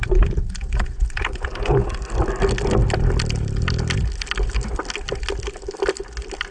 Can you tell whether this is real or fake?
real